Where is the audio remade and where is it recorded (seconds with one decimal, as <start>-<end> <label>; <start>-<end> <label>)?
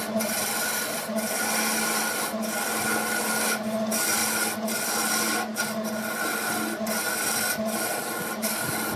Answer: 0.0-9.0 recorded